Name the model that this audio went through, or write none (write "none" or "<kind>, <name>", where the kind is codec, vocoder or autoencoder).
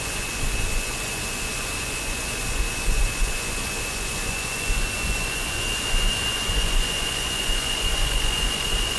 vocoder, Vocos